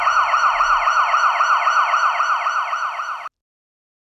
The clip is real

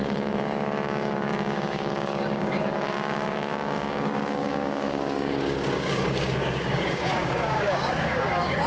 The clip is fake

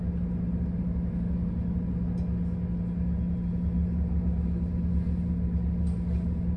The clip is real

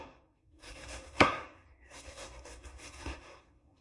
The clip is fake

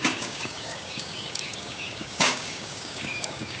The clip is fake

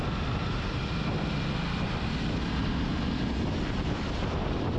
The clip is real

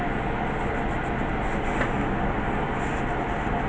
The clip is real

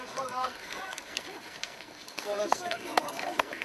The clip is fake